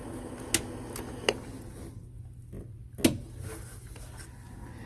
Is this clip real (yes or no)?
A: yes